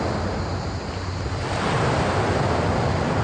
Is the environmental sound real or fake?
real